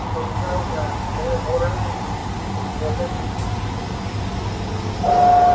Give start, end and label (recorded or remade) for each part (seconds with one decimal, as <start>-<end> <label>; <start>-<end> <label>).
0.0-5.5 recorded